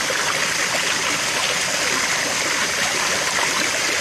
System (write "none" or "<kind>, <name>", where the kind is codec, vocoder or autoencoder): none